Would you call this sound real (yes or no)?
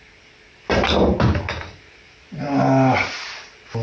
yes